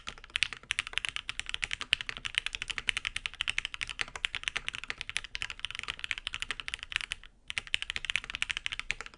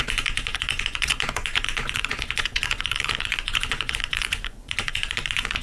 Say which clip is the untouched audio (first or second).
first